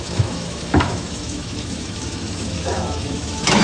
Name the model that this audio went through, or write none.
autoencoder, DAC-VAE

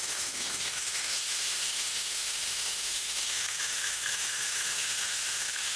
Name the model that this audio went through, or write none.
autoencoder, DAC-VAE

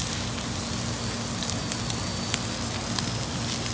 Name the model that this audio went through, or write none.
none